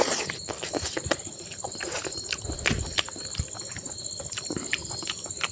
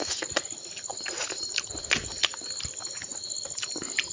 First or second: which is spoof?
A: first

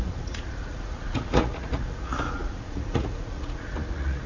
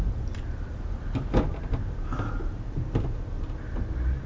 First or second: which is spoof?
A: first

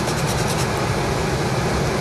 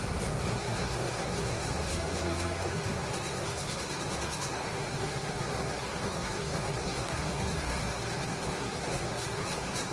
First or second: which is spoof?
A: second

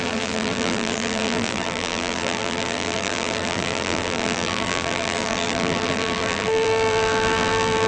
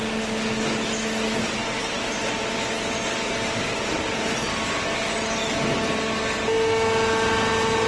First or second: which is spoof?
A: first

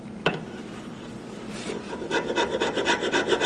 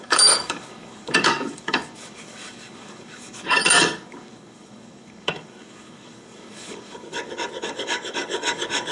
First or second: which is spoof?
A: second